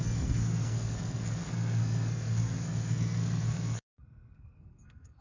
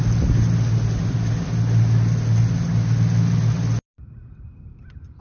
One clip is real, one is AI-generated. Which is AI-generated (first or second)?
first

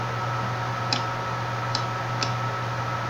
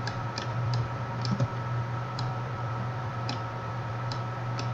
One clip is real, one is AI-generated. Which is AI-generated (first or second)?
second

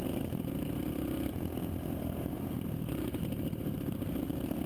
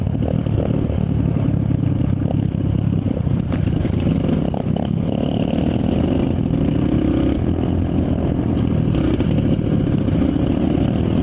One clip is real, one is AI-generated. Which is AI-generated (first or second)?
first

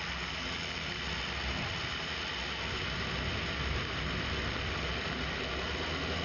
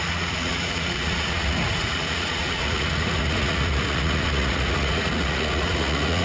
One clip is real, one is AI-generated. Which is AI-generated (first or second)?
second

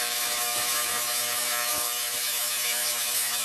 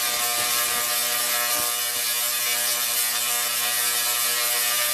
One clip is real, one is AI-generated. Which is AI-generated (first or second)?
first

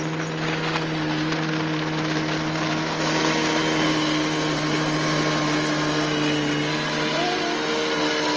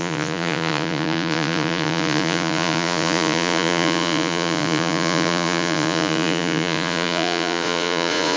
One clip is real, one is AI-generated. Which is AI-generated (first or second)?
second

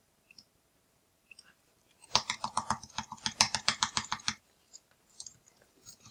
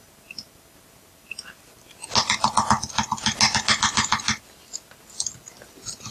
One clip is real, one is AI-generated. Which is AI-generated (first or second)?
first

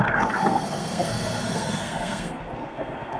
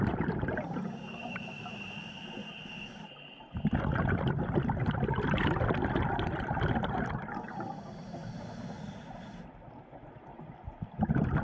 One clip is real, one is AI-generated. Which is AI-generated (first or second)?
first